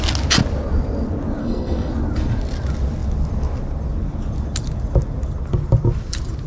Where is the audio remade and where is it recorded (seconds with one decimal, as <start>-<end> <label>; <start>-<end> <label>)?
0.0-1.4 recorded; 1.4-1.9 remade; 1.9-6.5 recorded